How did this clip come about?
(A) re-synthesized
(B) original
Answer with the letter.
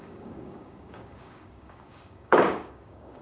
A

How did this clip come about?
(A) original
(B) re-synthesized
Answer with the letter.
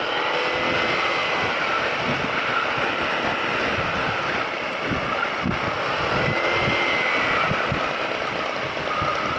A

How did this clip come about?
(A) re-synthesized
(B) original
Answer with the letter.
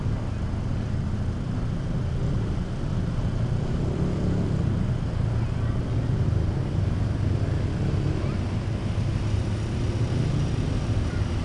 B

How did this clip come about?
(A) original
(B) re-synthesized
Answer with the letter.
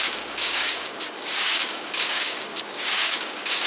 B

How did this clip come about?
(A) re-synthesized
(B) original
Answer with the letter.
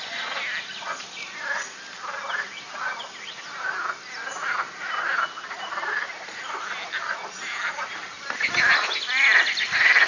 B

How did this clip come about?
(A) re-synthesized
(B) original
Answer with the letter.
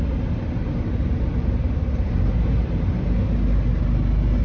B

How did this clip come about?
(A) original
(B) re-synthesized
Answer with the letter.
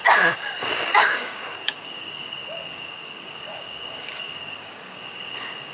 B